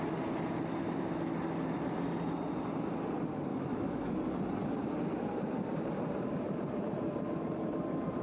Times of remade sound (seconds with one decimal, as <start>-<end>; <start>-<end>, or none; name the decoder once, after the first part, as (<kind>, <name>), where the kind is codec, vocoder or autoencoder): 3.5-4.1 (autoencoder, DAC-VAE)